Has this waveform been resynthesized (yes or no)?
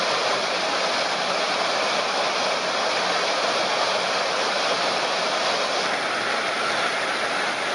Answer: no